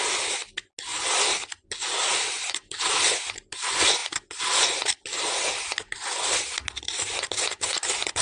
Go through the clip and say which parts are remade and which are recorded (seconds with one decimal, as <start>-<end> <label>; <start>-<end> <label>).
0.0-8.2 recorded